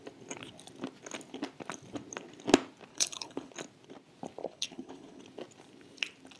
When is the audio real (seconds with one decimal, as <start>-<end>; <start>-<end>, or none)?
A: 0.0-2.9; 3.5-4.4; 5.2-6.4